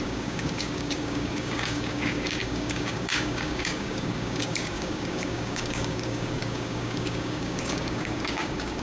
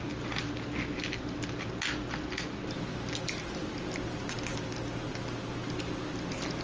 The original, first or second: second